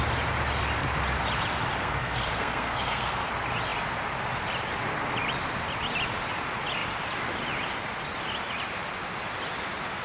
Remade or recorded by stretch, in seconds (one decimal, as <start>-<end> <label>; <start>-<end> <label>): 0.0-1.8 recorded; 1.8-3.3 remade; 3.3-10.0 recorded